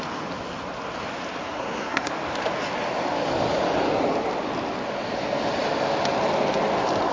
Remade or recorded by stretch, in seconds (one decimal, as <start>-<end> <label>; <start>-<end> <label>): 0.0-1.4 recorded; 1.4-2.1 remade; 2.1-7.1 recorded